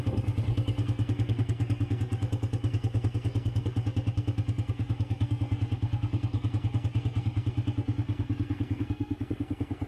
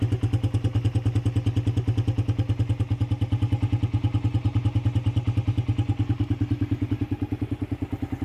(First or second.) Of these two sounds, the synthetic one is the first